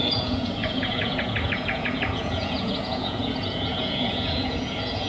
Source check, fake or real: fake